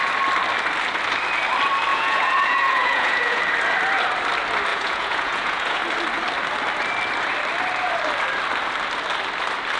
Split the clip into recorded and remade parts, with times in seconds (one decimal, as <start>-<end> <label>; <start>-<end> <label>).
0.0-1.9 recorded; 1.9-3.4 remade; 3.4-4.7 recorded; 4.7-5.8 remade; 5.8-9.8 recorded